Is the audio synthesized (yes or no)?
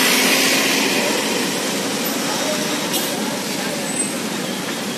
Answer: no